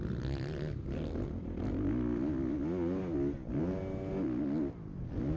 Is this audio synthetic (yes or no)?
no